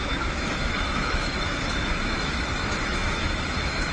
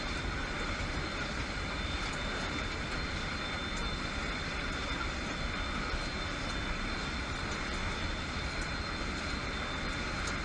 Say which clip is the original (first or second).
second